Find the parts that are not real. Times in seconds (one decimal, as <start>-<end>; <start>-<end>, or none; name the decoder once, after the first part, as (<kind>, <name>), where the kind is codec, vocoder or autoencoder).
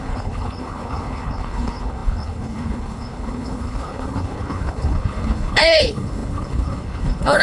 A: 0.0-7.4 (codec, HILCodec)